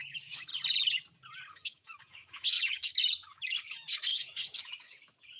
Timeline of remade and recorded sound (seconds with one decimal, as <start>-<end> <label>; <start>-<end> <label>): 0.0-0.5 remade; 0.5-1.5 recorded; 1.5-5.4 remade